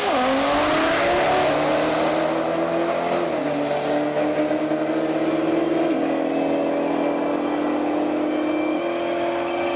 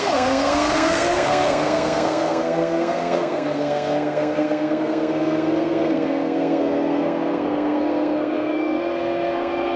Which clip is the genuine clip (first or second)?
first